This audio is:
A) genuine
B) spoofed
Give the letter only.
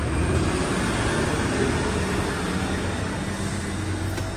A